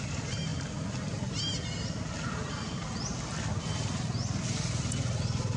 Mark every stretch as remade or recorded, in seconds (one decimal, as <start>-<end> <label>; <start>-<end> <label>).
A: 0.0-5.6 recorded